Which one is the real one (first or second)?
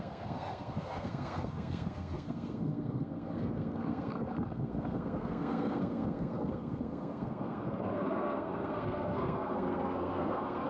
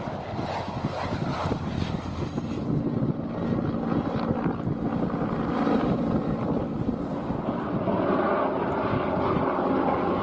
second